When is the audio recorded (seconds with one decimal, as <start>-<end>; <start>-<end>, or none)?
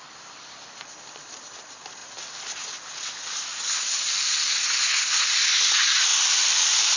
0.0-3.5; 4.5-6.1